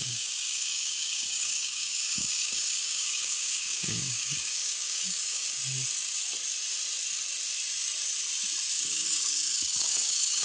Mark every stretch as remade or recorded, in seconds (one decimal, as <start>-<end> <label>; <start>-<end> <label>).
0.0-5.6 remade; 5.6-8.7 recorded; 8.7-10.4 remade